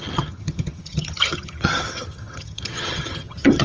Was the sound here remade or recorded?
remade